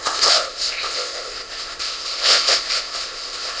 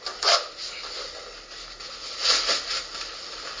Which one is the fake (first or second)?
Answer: first